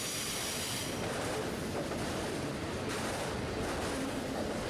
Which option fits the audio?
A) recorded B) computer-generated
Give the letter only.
A